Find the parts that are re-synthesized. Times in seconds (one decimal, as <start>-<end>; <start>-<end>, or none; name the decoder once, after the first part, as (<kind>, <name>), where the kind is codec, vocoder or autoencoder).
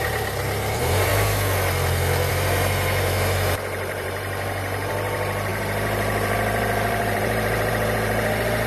0.0-1.1 (vocoder, BigVGAN v2); 2.3-8.7